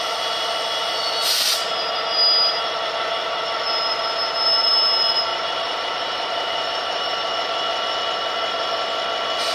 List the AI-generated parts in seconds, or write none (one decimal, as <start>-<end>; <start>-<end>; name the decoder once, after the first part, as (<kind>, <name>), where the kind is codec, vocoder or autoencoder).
5.3-7.3 (vocoder, BigVGAN v2)